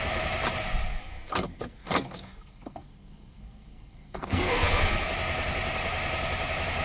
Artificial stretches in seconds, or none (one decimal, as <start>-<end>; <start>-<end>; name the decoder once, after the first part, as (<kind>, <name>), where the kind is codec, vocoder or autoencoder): 1.0-5.1 (codec, SNAC)